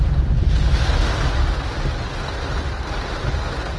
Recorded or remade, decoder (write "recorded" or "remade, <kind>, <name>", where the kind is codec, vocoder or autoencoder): recorded